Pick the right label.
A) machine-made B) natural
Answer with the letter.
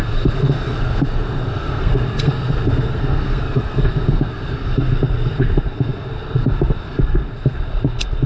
A